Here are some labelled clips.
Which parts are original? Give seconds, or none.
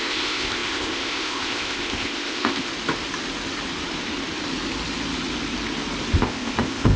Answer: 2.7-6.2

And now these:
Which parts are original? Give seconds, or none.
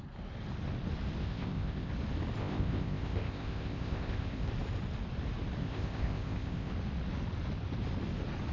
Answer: 0.0-1.2; 1.9-2.4; 4.5-5.6; 6.7-8.5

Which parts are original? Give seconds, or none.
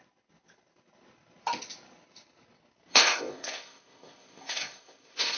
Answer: 0.0-2.9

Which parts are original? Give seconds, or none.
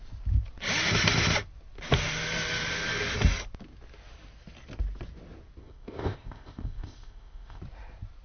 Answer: 0.0-5.6; 7.6-8.2